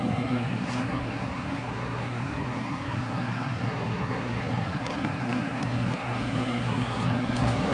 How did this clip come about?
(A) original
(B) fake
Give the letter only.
B